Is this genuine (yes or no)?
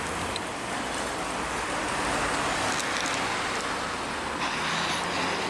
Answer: yes